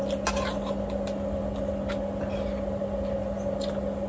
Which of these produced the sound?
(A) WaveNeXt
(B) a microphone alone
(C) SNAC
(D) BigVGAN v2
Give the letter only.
B